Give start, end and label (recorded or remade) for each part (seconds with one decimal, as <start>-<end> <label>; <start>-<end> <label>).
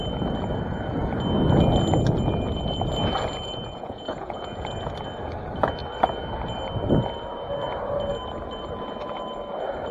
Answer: 0.0-3.4 recorded; 3.4-4.8 remade; 4.8-9.9 recorded